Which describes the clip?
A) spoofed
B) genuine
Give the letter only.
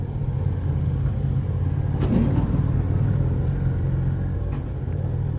B